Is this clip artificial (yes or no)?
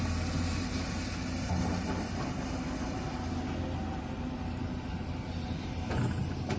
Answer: no